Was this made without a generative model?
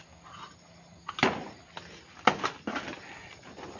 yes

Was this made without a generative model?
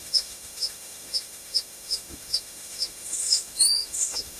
no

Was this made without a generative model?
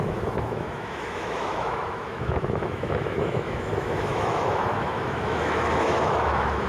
no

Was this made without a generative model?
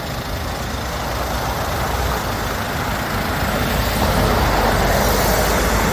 yes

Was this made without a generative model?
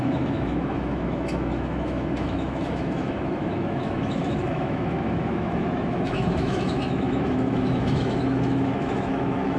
no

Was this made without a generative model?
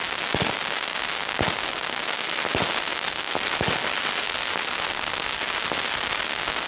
yes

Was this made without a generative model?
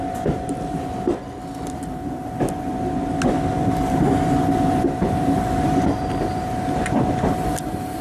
yes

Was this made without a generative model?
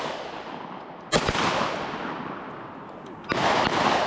yes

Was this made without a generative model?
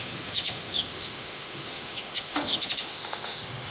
no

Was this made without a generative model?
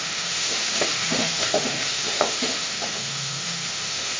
no